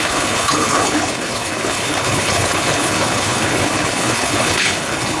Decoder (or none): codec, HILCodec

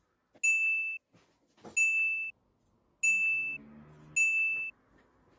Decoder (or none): none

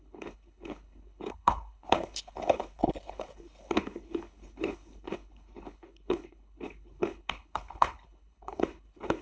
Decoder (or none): codec, HILCodec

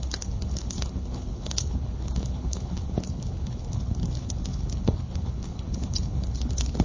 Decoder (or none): codec, HILCodec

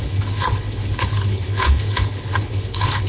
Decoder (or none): codec, HILCodec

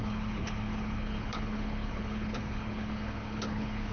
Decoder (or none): codec, HILCodec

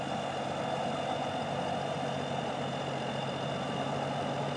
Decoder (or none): none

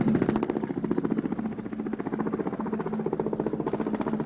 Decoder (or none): none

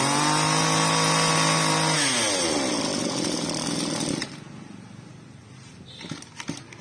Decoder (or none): none